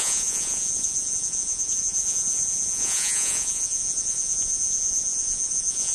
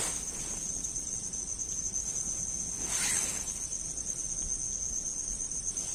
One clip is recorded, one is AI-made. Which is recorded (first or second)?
second